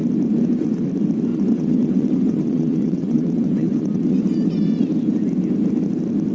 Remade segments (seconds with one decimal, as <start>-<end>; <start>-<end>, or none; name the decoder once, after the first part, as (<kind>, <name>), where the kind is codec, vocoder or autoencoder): 1.3-4.2 (vocoder, WaveNeXt)